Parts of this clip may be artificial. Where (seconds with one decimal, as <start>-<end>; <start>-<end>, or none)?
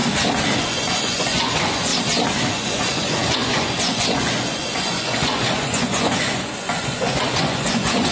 0.6-1.9; 2.5-8.1